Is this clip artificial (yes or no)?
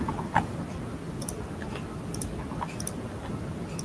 no